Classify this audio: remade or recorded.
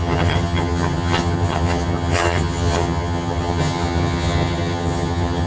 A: remade